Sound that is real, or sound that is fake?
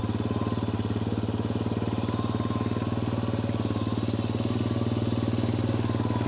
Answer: real